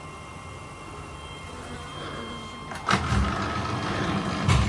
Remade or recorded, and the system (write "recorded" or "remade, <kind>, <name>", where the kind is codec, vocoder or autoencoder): recorded